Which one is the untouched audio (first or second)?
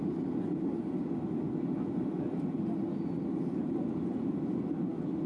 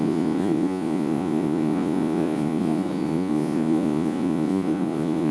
first